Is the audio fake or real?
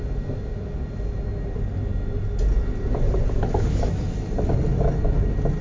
real